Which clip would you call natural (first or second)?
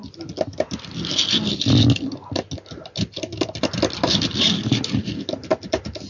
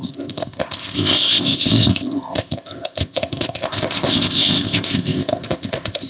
first